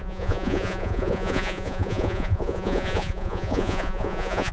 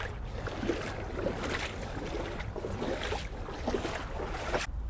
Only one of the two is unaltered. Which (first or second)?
second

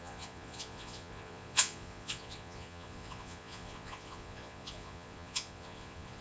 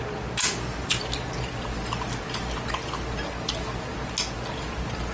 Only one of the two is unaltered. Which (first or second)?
second